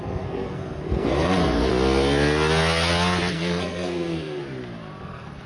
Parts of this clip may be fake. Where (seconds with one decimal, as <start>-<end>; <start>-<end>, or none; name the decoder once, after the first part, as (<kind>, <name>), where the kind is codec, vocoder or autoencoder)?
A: 0.0-1.7 (codec, SNAC); 3.3-4.4; 5.0-5.5